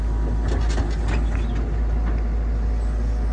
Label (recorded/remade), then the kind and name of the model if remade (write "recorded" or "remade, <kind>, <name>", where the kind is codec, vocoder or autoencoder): recorded